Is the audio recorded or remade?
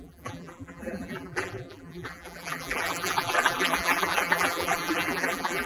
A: remade